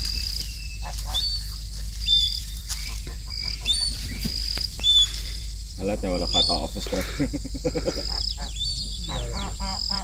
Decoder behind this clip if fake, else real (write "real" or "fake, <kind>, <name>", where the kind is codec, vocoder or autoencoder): fake, vocoder, BigVGAN v2